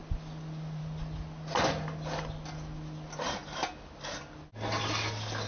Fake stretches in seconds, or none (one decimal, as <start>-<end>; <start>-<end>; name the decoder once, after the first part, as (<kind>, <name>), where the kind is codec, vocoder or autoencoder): none